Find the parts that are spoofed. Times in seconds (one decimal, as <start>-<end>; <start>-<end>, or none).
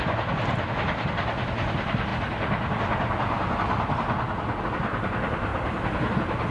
none